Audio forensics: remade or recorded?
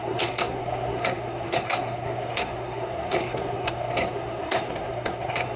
remade